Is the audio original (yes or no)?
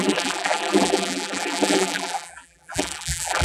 no